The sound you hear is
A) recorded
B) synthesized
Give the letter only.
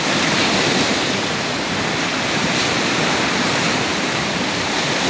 B